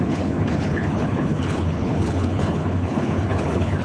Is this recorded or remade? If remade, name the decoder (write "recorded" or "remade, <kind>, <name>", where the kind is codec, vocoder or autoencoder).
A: remade, codec, HILCodec